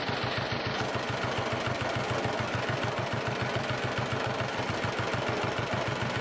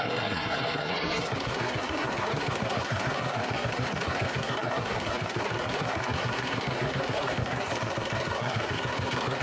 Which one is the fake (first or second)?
second